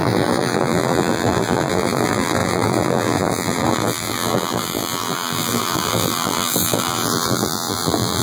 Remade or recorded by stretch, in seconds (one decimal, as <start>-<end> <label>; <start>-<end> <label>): 0.0-8.2 remade